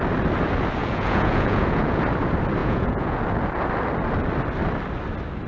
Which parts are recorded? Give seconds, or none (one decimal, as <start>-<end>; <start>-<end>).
0.0-0.8; 2.0-2.6; 3.2-5.5